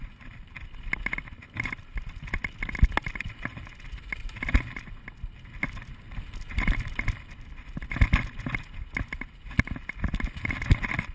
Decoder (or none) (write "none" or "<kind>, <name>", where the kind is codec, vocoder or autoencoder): none